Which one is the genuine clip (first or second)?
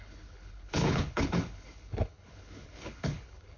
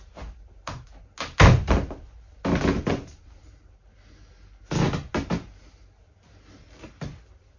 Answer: second